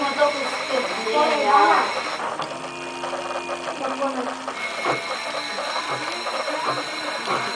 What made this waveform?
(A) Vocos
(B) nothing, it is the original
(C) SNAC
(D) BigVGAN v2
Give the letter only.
B